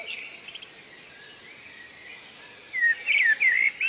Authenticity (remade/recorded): remade